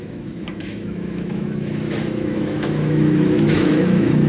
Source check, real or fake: fake